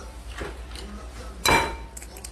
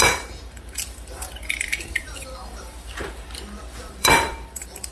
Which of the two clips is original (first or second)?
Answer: first